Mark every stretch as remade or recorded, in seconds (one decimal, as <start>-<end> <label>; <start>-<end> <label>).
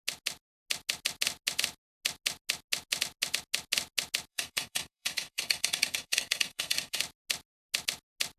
0.0-4.3 recorded; 4.3-7.0 remade; 7.0-8.4 recorded